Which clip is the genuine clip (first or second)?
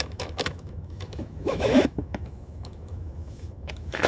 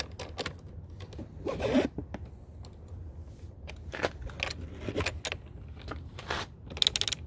second